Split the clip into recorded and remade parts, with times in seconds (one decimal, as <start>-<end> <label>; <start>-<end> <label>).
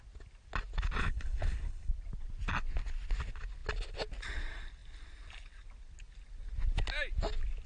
0.0-1.0 recorded; 1.0-1.9 remade; 1.9-7.7 recorded